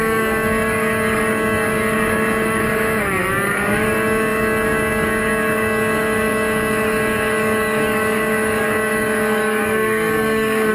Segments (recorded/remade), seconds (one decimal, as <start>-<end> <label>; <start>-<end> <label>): 0.0-10.7 remade